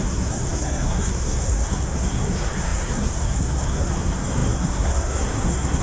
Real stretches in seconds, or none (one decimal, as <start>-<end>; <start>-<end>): none